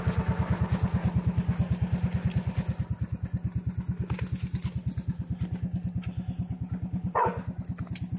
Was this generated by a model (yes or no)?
no